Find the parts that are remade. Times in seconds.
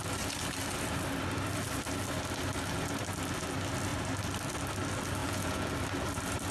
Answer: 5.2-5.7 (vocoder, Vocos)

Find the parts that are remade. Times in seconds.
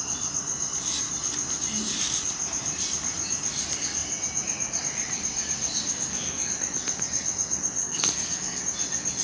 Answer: 5.9-6.5 (codec, SNAC); 7.8-8.6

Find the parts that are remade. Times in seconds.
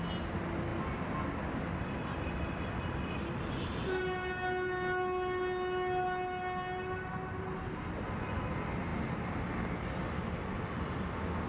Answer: none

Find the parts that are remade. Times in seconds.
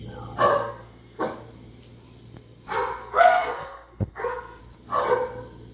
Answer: 0.5-1.2 (codec, SNAC); 3.0-4.6